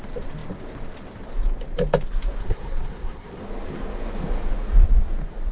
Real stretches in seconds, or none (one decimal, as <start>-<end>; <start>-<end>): 0.0-2.4; 3.4-5.5

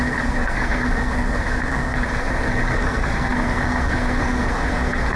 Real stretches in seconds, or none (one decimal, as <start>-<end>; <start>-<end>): none

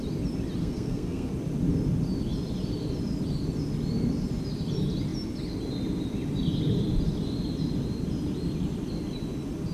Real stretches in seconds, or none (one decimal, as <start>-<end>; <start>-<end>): 0.0-0.6; 1.3-9.7

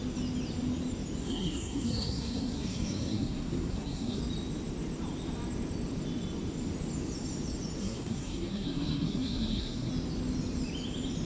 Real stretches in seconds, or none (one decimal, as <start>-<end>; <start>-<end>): 0.0-1.2; 4.2-7.8; 9.9-11.2

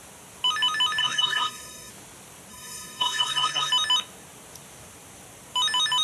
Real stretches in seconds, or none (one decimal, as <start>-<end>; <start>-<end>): 0.0-1.0; 1.9-2.5; 3.7-6.0

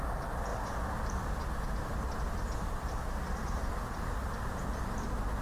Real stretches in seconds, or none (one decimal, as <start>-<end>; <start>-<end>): 0.0-5.4

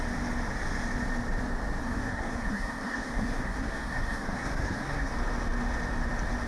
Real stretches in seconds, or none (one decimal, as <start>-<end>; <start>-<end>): 0.0-1.8; 5.1-6.5

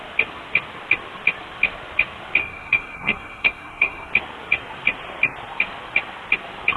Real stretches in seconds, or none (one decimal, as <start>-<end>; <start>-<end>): 0.0-2.4; 4.1-6.8